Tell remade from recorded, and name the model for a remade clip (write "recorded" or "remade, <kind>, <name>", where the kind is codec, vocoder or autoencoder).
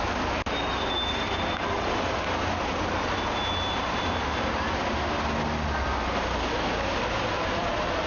recorded